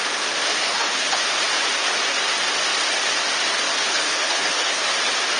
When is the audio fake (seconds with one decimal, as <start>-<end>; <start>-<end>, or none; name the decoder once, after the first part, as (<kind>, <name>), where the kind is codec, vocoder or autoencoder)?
0.5-1.3 (codec, HILCodec); 3.9-4.8